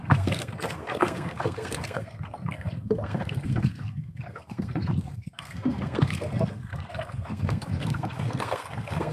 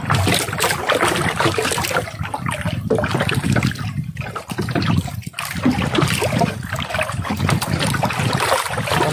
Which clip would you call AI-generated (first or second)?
first